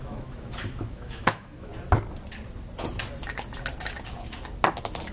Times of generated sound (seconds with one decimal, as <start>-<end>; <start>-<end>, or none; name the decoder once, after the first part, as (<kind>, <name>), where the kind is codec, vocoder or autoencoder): 0.0-1.7 (autoencoder, DAC-VAE)